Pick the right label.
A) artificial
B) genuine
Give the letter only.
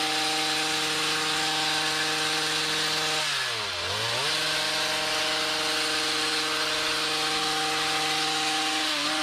B